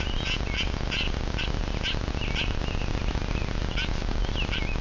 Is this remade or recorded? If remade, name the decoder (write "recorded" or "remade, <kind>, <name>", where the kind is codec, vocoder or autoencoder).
recorded